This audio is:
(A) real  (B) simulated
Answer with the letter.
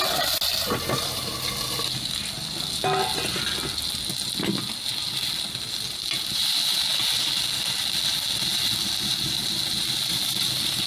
A